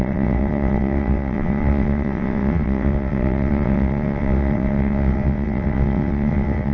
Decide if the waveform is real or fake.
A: fake